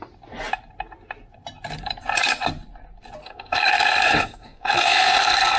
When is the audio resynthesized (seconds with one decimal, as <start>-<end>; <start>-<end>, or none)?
3.2-5.6